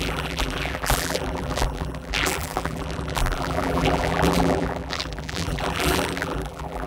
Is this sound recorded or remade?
remade